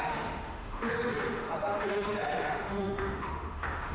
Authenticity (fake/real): fake